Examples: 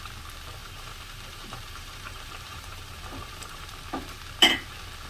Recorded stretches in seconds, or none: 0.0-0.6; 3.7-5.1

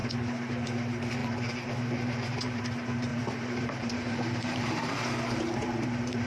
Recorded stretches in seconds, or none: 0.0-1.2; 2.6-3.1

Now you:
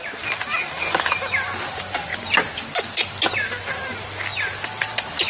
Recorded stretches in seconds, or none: 0.0-5.3

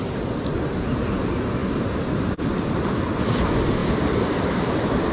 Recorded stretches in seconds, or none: 0.0-1.6; 3.4-3.8

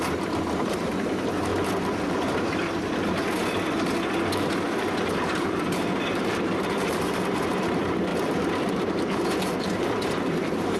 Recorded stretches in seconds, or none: 1.5-2.8; 3.4-5.2